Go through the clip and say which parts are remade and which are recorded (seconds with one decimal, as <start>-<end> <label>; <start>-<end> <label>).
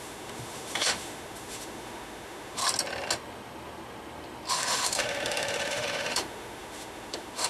0.0-2.6 remade; 2.6-4.5 recorded; 4.5-7.5 remade